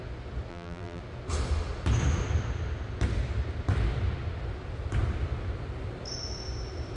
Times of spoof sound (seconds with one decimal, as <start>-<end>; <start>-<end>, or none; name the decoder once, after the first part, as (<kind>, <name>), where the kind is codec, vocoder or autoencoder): 0.5-1.0 (vocoder, BigVGAN v2)